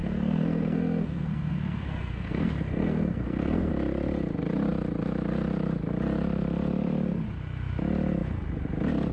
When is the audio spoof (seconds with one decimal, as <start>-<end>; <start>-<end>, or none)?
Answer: 0.0-3.7